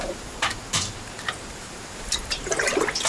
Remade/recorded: remade